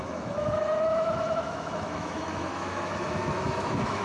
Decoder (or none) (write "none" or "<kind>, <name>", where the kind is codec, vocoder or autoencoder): autoencoder, DAC-VAE